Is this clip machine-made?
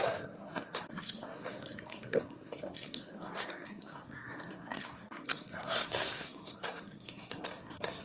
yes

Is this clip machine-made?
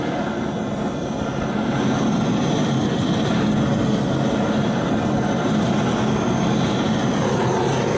no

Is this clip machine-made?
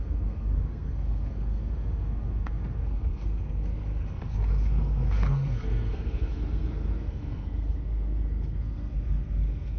yes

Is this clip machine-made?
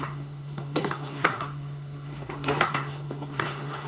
yes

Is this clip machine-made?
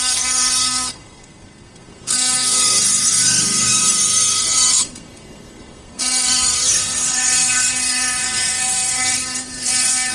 yes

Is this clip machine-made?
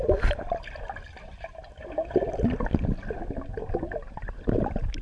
no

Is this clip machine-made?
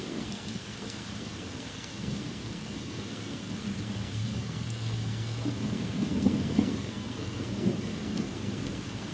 yes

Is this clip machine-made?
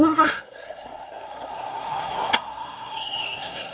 yes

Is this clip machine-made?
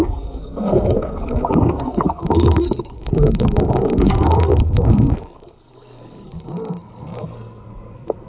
yes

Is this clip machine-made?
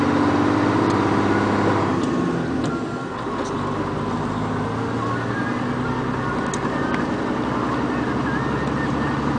no